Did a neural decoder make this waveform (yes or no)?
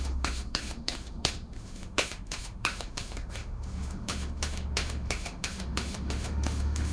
yes